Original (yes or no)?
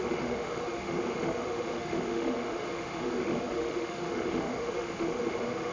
no